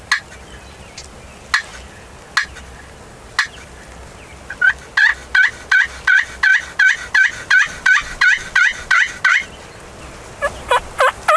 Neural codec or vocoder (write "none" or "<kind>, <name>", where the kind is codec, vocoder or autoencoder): none